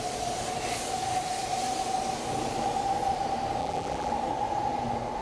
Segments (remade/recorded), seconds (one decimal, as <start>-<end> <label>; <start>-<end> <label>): 0.0-3.6 recorded; 3.6-4.1 remade; 4.1-5.2 recorded